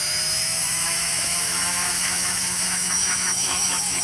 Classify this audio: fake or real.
fake